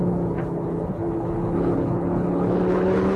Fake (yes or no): yes